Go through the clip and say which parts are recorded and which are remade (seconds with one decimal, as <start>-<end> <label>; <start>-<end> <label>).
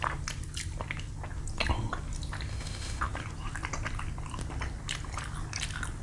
0.0-2.5 recorded; 2.5-3.0 remade; 3.0-6.0 recorded